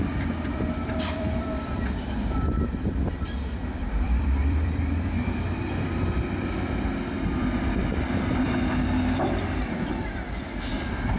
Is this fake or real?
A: fake